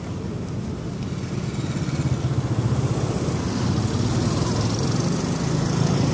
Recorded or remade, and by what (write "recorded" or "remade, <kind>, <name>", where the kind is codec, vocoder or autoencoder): recorded